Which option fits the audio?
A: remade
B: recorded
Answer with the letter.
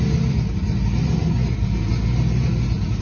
B